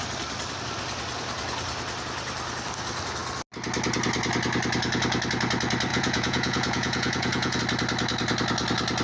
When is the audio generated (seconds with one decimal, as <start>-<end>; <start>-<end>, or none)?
5.9-7.6